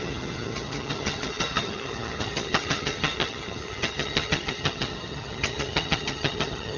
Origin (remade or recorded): remade